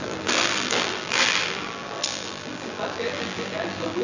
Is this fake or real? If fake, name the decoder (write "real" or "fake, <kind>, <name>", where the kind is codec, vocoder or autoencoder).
fake, vocoder, BigVGAN v2